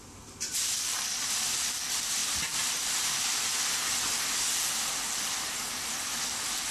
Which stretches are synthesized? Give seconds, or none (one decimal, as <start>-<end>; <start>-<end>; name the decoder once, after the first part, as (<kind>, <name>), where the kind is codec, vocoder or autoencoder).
2.2-3.2 (vocoder, BigVGAN v2)